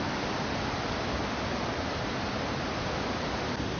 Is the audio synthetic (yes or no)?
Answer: no